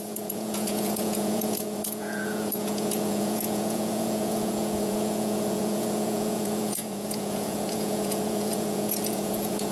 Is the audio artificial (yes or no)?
yes